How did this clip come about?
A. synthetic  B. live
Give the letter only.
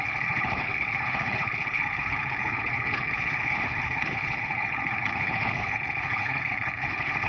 A